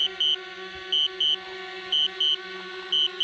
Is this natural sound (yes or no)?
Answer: yes